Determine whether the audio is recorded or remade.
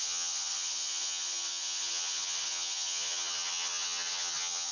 remade